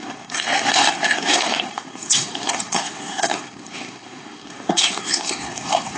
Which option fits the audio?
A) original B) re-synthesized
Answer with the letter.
B